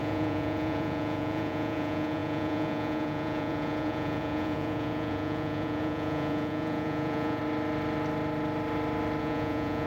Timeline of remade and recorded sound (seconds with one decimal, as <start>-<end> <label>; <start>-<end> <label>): 0.0-7.4 remade; 7.4-9.2 recorded; 9.2-9.9 remade